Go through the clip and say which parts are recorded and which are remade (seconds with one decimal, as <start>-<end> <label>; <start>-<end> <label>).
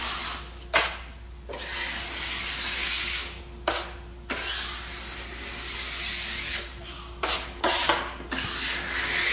0.0-2.7 recorded; 2.7-3.4 remade; 3.4-9.3 recorded